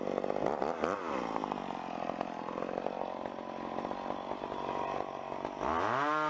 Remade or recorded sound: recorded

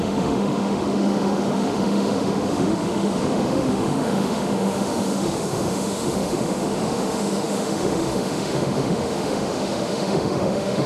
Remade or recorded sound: remade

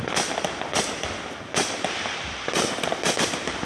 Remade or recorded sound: recorded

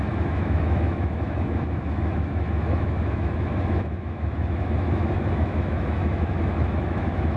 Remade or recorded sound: remade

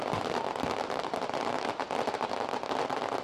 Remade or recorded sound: recorded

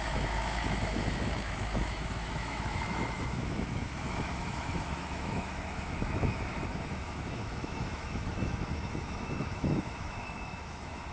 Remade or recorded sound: remade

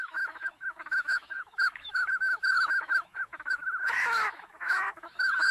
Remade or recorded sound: remade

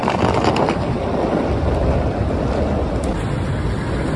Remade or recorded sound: recorded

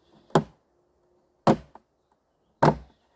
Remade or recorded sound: recorded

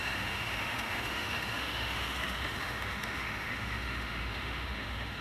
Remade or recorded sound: remade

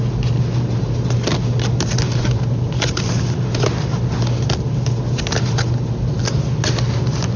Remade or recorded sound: recorded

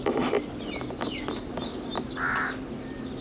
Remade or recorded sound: recorded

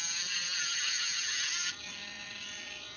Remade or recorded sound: recorded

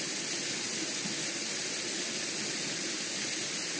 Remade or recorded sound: recorded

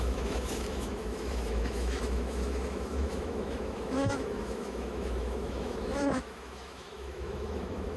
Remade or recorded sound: remade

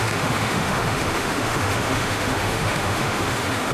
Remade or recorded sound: remade